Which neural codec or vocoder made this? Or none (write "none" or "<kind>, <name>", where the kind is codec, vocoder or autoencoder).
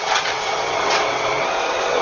vocoder, WaveNeXt